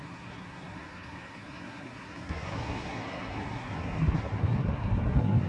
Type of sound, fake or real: fake